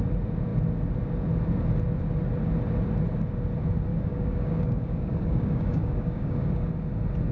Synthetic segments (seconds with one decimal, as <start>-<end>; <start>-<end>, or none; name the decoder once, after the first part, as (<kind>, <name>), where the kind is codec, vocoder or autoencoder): 3.9-6.7 (codec, DAC)

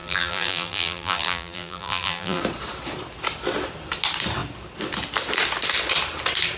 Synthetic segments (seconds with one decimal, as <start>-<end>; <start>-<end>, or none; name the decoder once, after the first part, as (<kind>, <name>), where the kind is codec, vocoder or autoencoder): 0.0-2.4 (vocoder, BigVGAN v2)

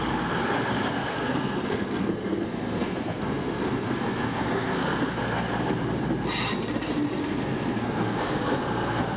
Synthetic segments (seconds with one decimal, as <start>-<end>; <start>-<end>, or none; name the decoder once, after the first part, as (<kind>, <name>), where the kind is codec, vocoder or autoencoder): 1.1-5.2 (codec, SNAC); 7.2-9.2

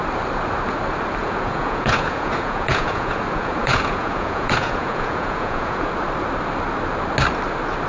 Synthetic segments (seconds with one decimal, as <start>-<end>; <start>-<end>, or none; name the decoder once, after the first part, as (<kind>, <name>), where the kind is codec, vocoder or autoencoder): 1.2-5.9 (vocoder, Vocos)

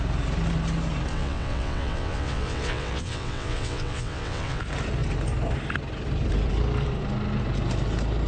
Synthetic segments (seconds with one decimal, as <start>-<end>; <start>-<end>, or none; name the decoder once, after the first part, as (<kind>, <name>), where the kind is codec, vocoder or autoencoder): 1.1-4.6 (vocoder, WaveNeXt)

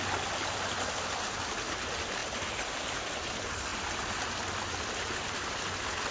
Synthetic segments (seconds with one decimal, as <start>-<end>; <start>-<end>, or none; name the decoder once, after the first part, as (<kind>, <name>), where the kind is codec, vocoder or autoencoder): none

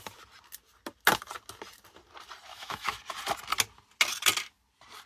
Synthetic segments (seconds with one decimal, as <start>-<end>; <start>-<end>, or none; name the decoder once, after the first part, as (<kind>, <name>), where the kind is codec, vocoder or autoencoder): 2.5-3.0 (autoencoder, DAC-VAE)

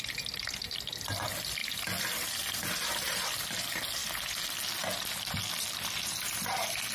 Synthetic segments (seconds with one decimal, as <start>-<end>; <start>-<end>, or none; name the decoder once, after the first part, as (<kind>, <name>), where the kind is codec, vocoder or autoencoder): 0.0-1.6 (vocoder, BigVGAN v2); 2.3-4.0; 6.0-6.9